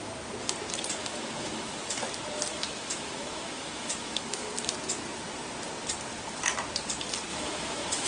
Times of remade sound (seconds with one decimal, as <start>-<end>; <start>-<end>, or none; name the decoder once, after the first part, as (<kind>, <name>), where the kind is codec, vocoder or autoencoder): 1.0-2.0 (autoencoder, DAC-VAE); 2.5-4.5; 7.3-8.1